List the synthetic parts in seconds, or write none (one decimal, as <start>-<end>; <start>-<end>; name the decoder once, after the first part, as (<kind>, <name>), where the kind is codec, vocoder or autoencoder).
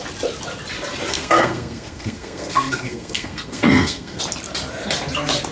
1.1-4.2 (codec, SNAC)